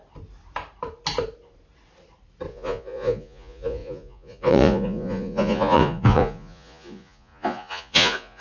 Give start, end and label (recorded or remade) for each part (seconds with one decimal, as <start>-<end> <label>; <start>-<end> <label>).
0.0-2.5 recorded; 2.5-8.4 remade